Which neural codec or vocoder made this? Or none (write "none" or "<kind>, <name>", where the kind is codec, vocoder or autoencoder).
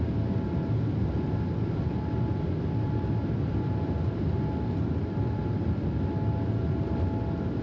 none